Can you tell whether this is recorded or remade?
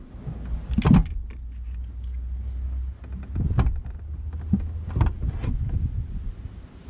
recorded